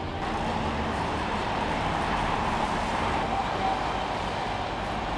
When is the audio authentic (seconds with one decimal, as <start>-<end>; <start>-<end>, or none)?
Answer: 0.0-0.5; 3.6-5.2